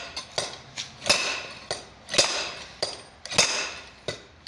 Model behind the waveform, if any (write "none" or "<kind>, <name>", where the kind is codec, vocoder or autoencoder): none